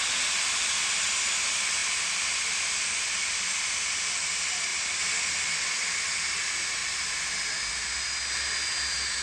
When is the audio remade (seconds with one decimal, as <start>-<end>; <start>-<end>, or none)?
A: 1.8-4.2